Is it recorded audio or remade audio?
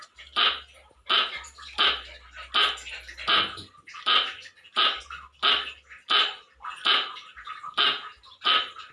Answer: recorded